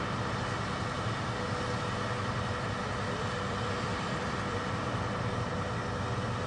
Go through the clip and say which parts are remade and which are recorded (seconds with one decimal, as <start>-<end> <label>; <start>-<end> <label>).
0.0-3.9 recorded; 3.9-5.1 remade; 5.1-6.5 recorded